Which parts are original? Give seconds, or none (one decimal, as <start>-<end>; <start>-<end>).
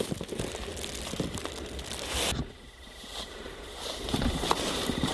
0.0-5.1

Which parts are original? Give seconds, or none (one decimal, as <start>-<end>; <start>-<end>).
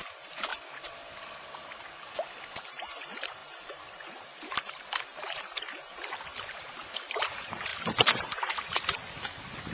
0.5-2.4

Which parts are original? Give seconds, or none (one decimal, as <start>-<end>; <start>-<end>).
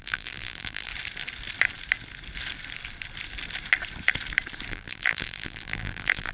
0.9-4.7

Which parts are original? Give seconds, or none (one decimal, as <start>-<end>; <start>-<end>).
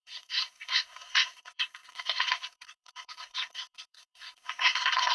none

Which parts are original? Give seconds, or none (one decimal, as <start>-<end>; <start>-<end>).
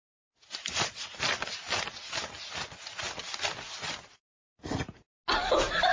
0.0-5.9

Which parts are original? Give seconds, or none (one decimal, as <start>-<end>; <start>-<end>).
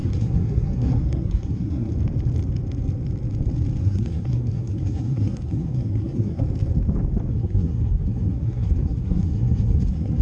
1.9-3.8; 6.4-7.3